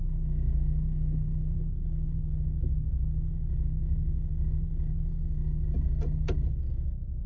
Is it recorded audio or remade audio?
recorded